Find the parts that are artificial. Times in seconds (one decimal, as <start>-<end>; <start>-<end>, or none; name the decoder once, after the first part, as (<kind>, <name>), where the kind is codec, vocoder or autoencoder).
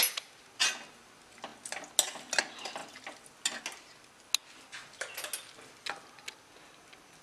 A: none